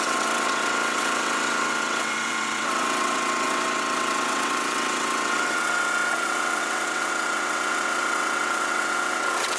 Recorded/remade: remade